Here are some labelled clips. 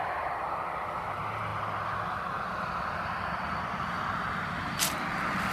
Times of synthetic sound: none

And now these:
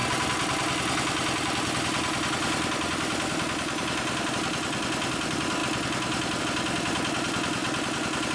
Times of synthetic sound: none

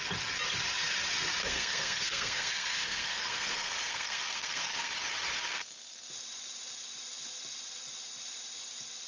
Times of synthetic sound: 1.4-4.9 (codec, SNAC); 5.5-6.1

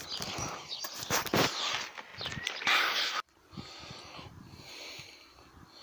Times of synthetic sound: none

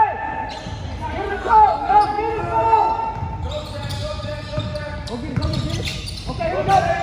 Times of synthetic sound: 1.3-3.0 (codec, SNAC)